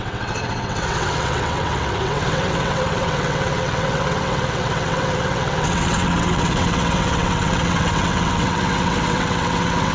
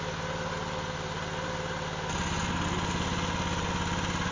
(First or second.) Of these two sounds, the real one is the second